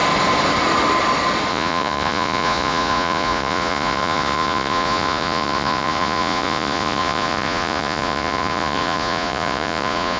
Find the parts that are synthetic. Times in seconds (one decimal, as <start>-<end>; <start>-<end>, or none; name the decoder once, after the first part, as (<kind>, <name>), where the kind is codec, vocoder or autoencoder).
1.5-10.2 (vocoder, Vocos)